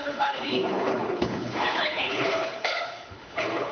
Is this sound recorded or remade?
remade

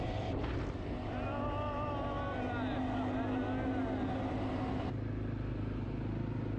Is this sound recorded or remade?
recorded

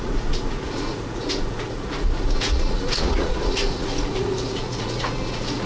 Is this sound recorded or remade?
remade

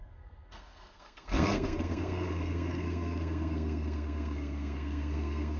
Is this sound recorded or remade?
remade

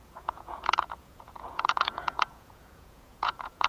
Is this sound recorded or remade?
remade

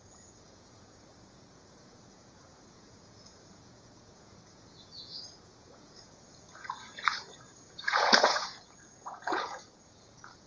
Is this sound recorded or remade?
remade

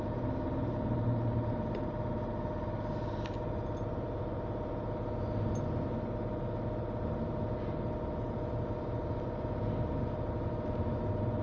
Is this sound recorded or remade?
recorded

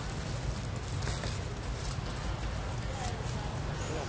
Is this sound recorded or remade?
recorded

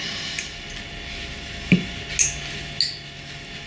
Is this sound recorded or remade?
recorded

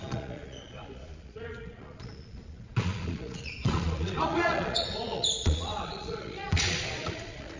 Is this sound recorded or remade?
remade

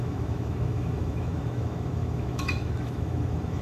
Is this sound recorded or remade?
remade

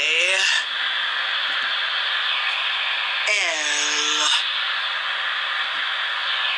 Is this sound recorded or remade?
recorded